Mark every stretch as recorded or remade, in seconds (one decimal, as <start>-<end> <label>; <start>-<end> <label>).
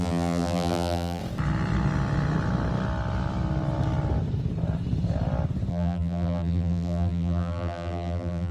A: 0.0-1.2 remade; 1.2-5.7 recorded; 5.7-8.5 remade